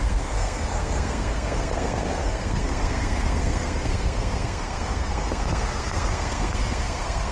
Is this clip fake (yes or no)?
yes